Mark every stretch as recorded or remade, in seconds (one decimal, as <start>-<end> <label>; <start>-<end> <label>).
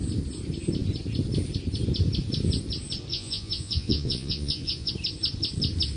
0.0-3.1 recorded; 3.1-4.9 remade; 4.9-6.0 recorded